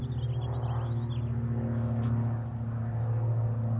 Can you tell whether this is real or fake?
real